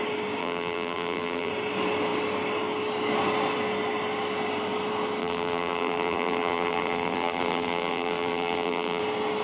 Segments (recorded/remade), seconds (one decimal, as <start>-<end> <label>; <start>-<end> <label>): 0.0-0.4 recorded; 0.4-1.5 remade; 1.5-5.2 recorded; 5.2-9.0 remade; 9.0-9.4 recorded